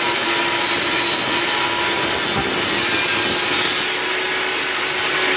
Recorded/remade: recorded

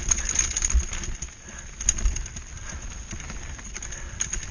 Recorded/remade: recorded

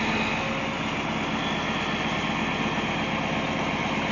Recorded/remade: recorded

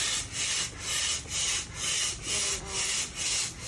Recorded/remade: recorded